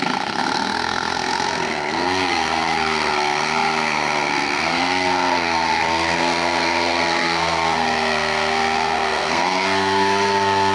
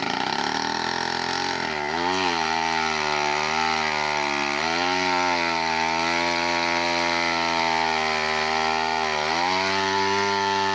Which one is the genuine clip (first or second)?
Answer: second